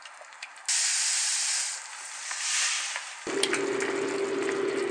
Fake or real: real